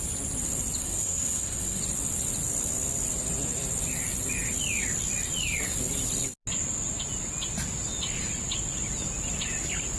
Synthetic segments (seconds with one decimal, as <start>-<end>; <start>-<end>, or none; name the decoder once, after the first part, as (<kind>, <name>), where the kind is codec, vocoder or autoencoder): 0.8-1.8 (codec, SNAC)